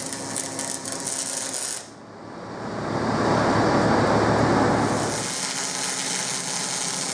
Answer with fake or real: real